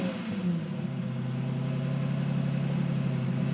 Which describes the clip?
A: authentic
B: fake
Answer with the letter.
A